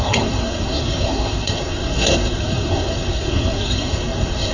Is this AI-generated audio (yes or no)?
yes